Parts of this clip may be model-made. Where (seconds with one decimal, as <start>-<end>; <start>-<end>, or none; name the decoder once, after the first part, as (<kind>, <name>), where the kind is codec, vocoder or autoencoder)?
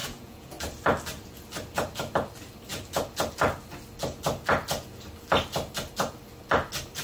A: 0.0-0.5 (vocoder, Vocos)